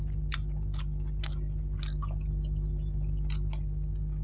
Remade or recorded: recorded